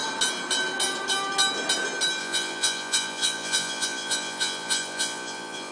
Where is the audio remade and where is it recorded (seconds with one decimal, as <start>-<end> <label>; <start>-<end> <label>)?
0.0-2.2 recorded; 2.2-5.7 remade